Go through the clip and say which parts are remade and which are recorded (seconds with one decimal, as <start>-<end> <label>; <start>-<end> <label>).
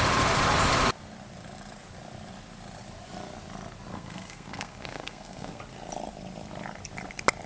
0.0-3.9 recorded; 3.9-5.6 remade; 5.6-7.5 recorded